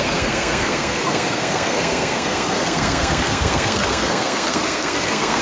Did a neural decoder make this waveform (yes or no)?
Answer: yes